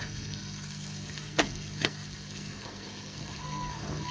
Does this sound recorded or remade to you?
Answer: remade